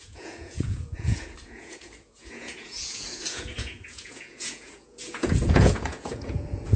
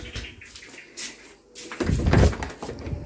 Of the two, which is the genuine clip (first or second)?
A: second